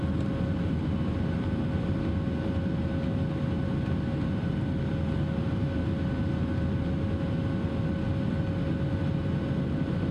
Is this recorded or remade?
recorded